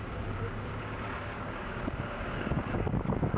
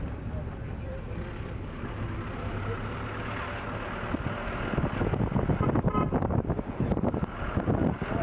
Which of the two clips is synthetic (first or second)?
first